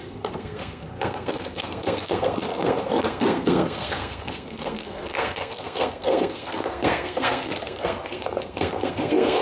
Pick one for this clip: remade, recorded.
remade